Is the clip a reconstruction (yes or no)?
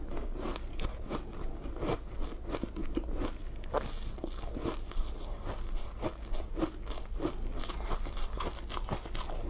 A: no